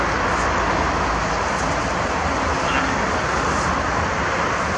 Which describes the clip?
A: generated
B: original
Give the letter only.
B